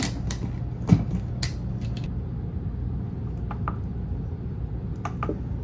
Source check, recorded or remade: recorded